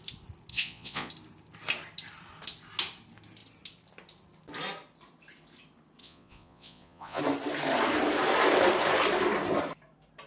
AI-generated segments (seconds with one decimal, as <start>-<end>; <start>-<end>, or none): 0.5-1.1; 6.0-7.2

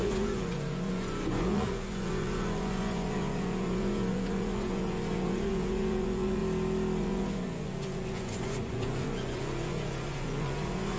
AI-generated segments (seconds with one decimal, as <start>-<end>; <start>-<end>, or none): 0.0-6.4; 7.0-11.0

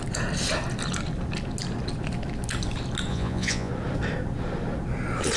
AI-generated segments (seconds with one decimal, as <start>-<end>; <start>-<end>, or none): 3.1-3.7

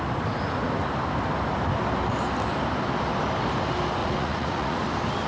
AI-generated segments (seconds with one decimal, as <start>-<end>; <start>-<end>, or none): 4.0-4.8

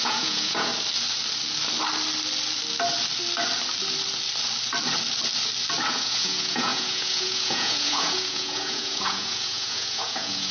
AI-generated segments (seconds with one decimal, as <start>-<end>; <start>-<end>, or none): 0.0-0.7; 5.9-10.5

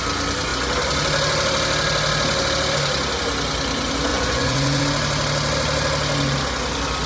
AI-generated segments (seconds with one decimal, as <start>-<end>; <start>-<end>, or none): 4.1-4.8

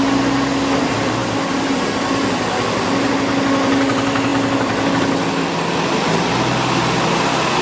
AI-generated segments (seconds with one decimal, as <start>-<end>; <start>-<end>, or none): none